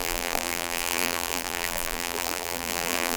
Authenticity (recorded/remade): remade